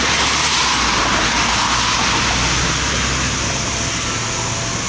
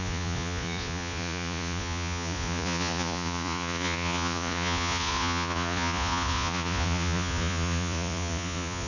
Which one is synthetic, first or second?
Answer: second